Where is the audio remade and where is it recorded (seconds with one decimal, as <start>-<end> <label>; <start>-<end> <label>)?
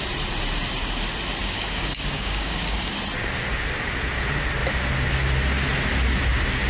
0.0-1.4 recorded; 1.4-2.9 remade; 2.9-6.7 recorded